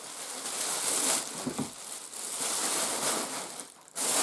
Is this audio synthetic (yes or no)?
no